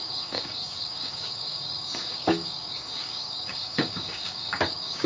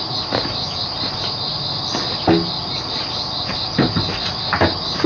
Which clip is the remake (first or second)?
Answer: first